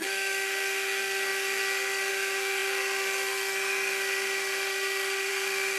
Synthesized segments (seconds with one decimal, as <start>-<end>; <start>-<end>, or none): 0.0-5.8